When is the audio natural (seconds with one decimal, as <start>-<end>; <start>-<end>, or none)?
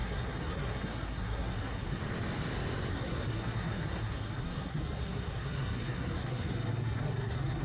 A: 2.0-2.9